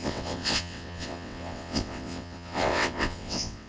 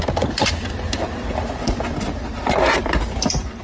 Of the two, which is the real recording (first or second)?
second